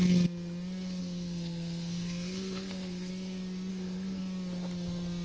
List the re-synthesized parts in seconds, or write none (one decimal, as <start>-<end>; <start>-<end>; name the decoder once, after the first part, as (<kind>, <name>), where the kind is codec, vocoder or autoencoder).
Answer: 1.0-3.1 (codec, SNAC); 3.7-4.2